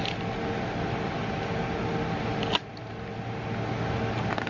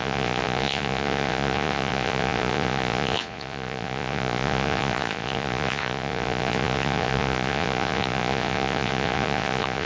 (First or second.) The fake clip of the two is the second